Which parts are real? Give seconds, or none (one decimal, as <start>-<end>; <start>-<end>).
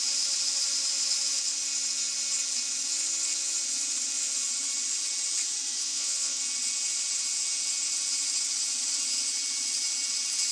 0.0-5.8; 6.4-10.5